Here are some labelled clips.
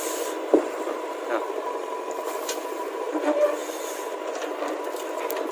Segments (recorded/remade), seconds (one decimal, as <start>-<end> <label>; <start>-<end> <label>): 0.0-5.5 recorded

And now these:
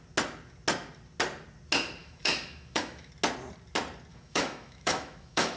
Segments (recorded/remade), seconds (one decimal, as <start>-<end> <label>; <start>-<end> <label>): 0.0-2.0 recorded; 2.0-3.1 remade; 3.1-4.1 recorded; 4.1-5.6 remade

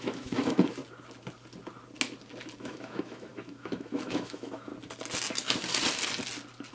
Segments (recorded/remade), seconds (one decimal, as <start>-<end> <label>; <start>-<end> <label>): 0.0-0.8 remade; 0.8-2.6 recorded; 2.6-4.7 remade; 4.7-6.7 recorded